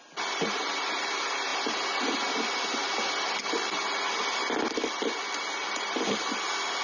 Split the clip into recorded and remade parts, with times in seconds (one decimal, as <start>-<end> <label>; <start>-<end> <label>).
0.0-6.8 recorded